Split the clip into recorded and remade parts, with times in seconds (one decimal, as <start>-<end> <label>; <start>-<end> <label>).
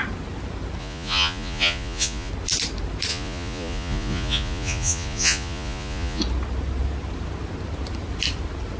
0.0-0.8 recorded; 0.8-2.3 remade; 2.3-3.1 recorded; 3.1-6.2 remade; 6.2-8.8 recorded